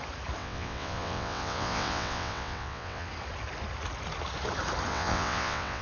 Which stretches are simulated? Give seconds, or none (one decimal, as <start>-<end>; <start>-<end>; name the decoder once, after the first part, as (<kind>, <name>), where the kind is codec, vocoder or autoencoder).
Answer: 0.4-3.1 (vocoder, WaveNeXt); 4.9-5.8